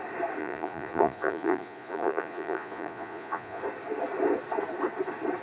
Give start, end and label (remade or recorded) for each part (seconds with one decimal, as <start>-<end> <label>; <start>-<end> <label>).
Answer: 0.0-0.4 recorded; 0.4-3.6 remade; 3.6-5.4 recorded

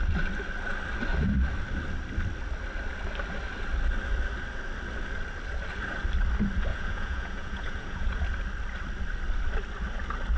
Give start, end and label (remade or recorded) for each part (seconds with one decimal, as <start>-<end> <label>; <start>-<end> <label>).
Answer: 0.0-6.7 recorded; 6.7-8.2 remade; 8.2-10.4 recorded

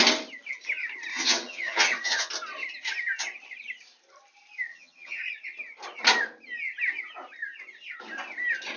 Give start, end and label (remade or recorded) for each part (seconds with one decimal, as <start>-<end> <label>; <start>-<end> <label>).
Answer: 0.0-1.1 recorded; 1.1-2.3 remade; 2.3-4.7 recorded; 4.7-5.2 remade; 5.2-8.8 recorded

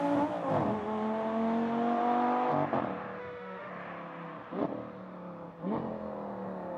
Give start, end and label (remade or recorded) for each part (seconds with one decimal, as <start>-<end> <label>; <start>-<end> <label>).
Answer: 0.0-3.2 recorded; 3.2-3.7 remade; 3.7-6.8 recorded

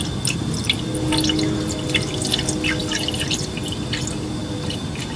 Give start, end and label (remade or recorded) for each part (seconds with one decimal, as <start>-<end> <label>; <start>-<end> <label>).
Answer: 0.0-5.2 recorded